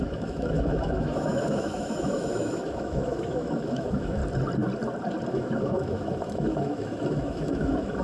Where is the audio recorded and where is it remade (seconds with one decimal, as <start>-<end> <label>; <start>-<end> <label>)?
0.0-4.2 remade; 4.2-5.3 recorded; 5.3-8.0 remade